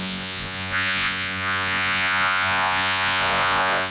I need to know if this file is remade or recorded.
remade